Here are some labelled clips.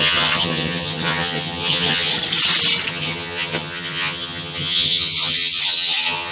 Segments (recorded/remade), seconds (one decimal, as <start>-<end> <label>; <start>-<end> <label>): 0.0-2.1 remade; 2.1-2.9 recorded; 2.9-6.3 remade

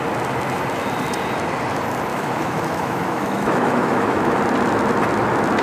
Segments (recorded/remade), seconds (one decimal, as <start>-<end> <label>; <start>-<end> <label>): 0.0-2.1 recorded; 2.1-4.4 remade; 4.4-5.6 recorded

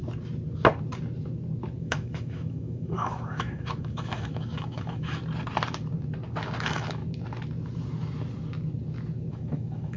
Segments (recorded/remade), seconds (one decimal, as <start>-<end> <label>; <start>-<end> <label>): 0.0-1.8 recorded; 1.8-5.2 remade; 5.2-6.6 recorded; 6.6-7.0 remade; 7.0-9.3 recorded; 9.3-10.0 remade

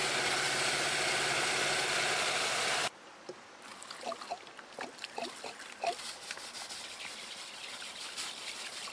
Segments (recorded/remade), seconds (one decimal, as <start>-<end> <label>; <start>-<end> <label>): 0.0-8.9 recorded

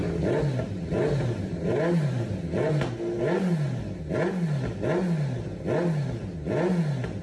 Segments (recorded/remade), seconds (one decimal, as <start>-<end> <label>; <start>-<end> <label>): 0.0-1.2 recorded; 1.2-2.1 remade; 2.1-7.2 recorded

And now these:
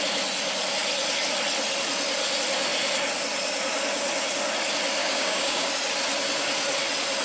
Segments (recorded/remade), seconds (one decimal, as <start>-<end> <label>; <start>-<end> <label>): 0.0-5.0 recorded; 5.0-5.7 remade; 5.7-7.2 recorded